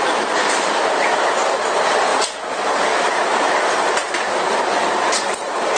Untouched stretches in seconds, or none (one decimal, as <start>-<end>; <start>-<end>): 0.0-2.1